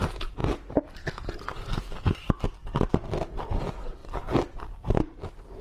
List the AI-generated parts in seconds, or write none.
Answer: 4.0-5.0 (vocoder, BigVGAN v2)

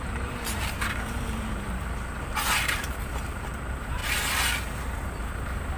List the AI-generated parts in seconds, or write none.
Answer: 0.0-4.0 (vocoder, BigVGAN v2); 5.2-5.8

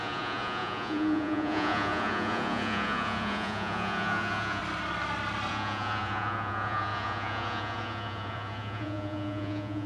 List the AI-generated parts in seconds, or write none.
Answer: 0.0-4.6 (vocoder, Vocos); 5.5-9.9

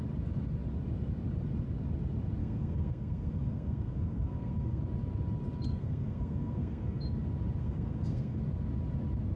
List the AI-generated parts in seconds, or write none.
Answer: 2.4-4.8 (codec, SNAC); 5.7-7.1; 7.6-8.4

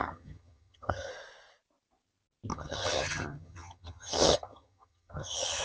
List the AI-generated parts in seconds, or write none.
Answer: 0.0-1.1 (vocoder, HiFi-GAN); 2.5-5.6

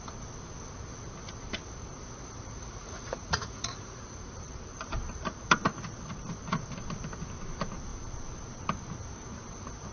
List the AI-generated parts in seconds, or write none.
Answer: 2.6-4.0 (vocoder, Vocos)

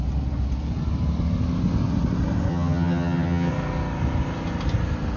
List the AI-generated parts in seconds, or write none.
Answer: 2.5-3.5 (vocoder, HiFi-GAN)